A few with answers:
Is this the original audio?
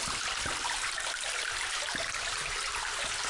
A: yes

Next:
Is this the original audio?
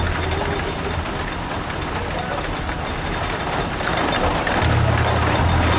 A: yes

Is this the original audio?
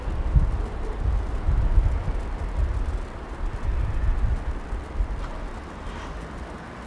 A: yes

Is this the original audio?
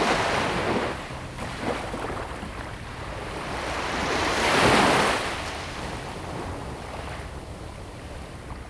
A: no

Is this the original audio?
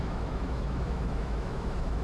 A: no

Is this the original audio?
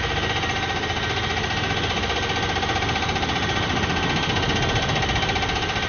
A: yes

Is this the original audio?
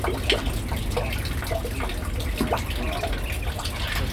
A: yes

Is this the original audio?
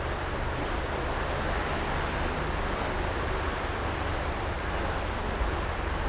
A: yes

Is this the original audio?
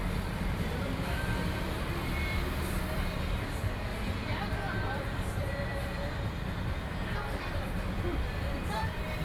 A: no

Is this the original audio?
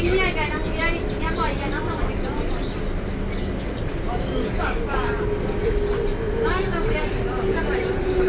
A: yes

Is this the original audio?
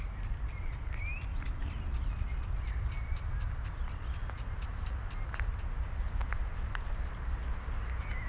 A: yes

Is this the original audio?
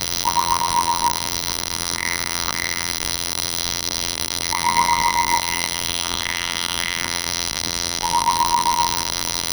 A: no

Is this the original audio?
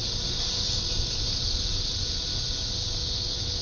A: yes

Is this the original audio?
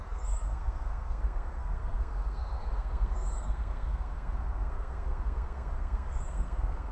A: no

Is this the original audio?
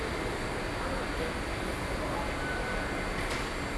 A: yes